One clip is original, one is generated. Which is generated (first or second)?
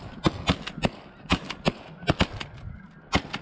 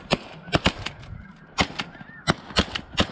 second